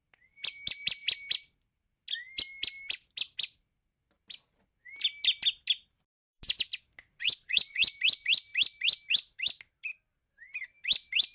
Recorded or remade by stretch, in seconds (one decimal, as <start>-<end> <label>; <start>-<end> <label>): 0.0-7.2 recorded; 7.2-7.9 remade; 7.9-11.3 recorded

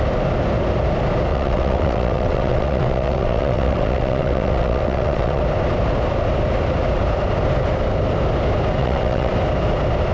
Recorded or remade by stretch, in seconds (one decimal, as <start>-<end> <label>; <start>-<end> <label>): 0.0-1.3 recorded; 1.3-5.4 remade; 5.4-8.8 recorded; 8.8-9.3 remade; 9.3-10.1 recorded

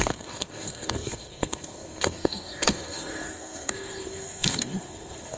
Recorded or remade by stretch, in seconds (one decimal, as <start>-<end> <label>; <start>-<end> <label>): 0.0-5.4 remade

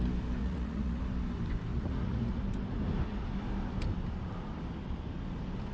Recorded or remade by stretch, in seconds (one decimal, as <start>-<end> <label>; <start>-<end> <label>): 0.0-0.4 recorded; 0.4-1.0 remade; 1.0-1.7 recorded; 1.7-2.4 remade; 2.4-5.7 recorded

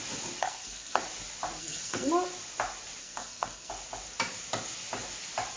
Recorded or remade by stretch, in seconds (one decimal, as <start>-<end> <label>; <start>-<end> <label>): 0.0-0.4 recorded; 0.4-1.0 remade; 1.0-1.6 recorded; 1.6-2.1 remade; 2.1-3.0 recorded; 3.0-3.7 remade; 3.7-5.6 recorded

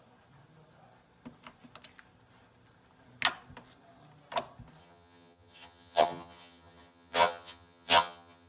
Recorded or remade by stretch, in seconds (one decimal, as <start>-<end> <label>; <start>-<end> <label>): 0.0-4.8 recorded; 4.8-8.5 remade

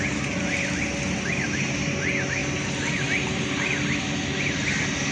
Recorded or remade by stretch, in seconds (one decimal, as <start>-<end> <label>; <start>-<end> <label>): 0.0-5.1 recorded

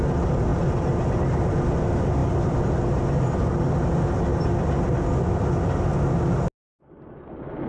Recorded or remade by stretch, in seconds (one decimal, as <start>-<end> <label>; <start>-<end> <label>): 0.0-7.7 recorded